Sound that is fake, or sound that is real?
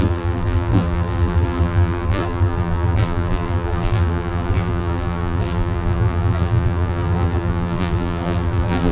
fake